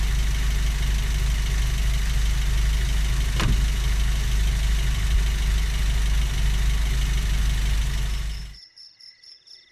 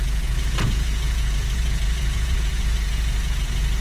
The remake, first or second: second